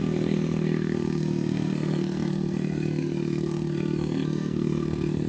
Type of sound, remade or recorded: remade